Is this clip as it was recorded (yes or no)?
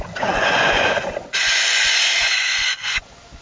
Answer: no